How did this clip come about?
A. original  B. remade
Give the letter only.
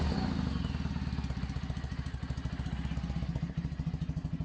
A